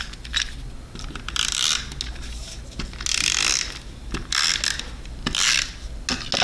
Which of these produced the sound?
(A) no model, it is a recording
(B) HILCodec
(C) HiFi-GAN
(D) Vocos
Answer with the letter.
A